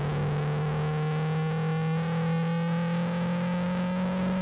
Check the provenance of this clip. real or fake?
fake